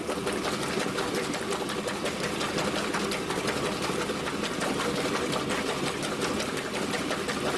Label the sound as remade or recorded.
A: recorded